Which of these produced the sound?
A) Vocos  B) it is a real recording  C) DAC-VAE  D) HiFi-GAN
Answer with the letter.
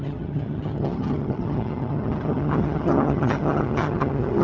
D